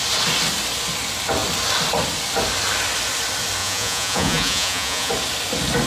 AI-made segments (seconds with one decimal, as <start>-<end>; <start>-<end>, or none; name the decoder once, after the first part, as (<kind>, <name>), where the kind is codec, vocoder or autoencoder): 3.6-5.1 (vocoder, Vocos)